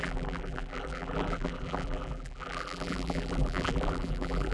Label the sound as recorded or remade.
remade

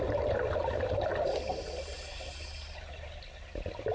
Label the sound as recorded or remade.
recorded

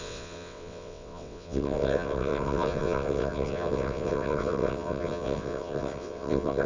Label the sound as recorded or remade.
remade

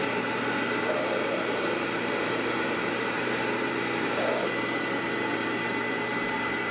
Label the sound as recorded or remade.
remade